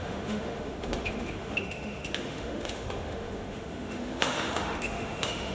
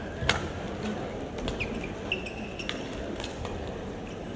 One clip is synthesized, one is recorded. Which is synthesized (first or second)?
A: first